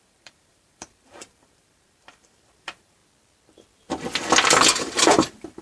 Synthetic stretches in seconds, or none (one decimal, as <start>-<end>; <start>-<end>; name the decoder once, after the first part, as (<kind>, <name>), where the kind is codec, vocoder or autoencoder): 0.0-3.0 (vocoder, BigVGAN v2); 4.7-5.6

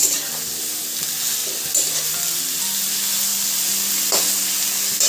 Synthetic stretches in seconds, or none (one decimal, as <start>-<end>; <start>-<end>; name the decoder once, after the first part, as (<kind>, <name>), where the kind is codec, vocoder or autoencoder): none